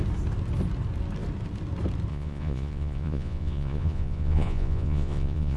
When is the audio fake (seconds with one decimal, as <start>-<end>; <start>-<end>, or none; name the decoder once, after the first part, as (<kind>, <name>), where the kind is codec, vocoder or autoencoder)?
2.1-5.6 (vocoder, Vocos)